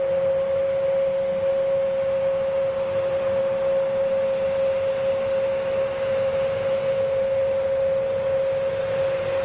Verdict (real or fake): real